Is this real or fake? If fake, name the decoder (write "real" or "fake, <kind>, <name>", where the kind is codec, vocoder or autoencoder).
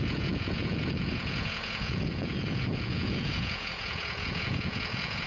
fake, vocoder, Vocos